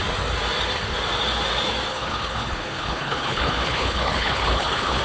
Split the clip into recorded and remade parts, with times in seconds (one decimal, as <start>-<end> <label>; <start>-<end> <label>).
0.0-1.9 recorded; 1.9-5.0 remade